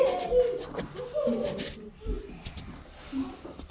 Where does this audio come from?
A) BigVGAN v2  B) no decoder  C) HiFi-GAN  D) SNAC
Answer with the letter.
B